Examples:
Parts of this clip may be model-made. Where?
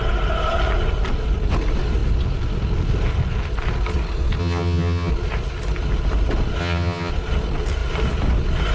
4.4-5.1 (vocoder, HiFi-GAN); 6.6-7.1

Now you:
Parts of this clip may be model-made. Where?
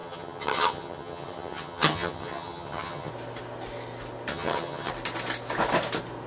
0.0-3.1 (vocoder, HiFi-GAN); 4.3-4.9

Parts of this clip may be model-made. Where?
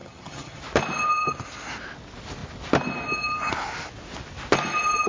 0.0-0.6 (vocoder, HiFi-GAN)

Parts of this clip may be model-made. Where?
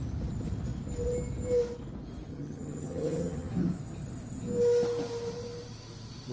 2.3-3.5 (vocoder, HiFi-GAN)